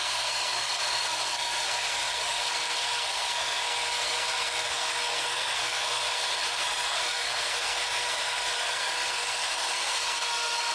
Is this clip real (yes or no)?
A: no